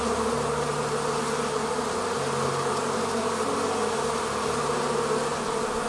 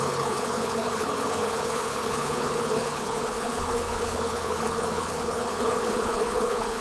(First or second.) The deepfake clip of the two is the second